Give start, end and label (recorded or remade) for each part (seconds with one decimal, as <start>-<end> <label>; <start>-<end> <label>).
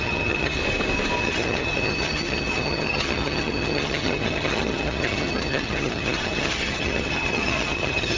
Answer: 0.0-0.6 remade; 0.6-1.2 recorded; 1.2-8.2 remade